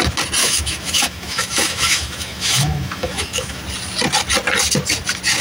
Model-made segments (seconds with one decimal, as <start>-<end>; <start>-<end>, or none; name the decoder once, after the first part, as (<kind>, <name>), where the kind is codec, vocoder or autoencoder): 0.4-3.6 (autoencoder, DAC-VAE)